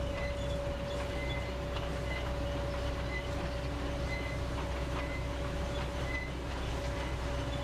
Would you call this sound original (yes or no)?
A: yes